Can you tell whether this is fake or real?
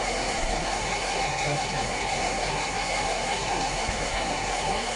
fake